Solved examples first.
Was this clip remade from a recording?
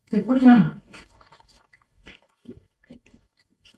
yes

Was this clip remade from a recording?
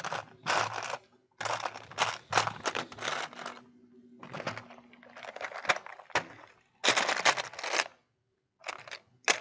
no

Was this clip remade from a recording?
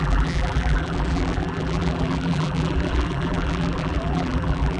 yes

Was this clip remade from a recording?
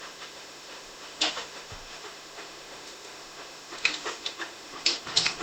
yes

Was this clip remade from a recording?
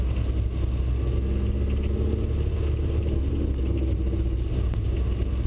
no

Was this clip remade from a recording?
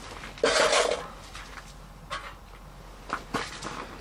no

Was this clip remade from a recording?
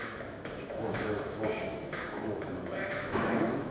yes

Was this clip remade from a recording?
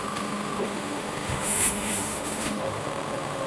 yes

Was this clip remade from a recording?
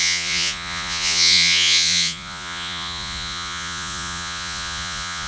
yes